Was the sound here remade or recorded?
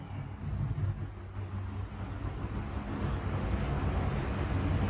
recorded